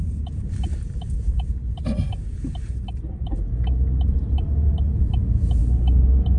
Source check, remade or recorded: recorded